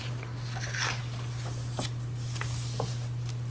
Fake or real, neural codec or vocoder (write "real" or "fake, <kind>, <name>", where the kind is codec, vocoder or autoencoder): real